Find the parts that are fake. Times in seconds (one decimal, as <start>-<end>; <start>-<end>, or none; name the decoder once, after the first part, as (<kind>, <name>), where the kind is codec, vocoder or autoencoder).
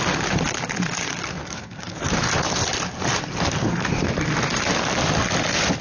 1.2-2.1 (codec, SNAC)